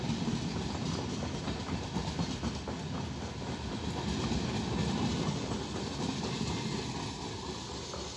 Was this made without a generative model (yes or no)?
yes